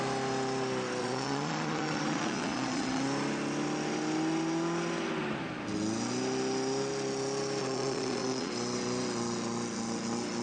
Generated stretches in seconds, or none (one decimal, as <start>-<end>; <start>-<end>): 1.0-3.0; 7.6-8.5